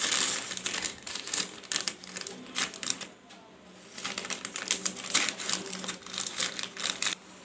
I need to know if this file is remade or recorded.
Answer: remade